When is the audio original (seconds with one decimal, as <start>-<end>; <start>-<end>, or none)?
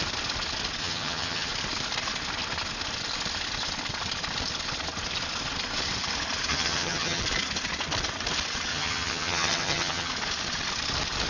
0.0-0.8; 1.5-6.5; 7.2-8.7; 10.1-11.3